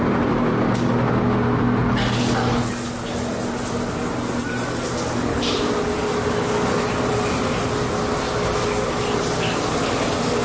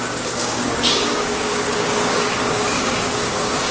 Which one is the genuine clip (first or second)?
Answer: first